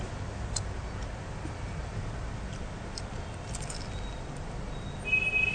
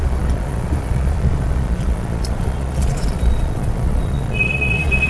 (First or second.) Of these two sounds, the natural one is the first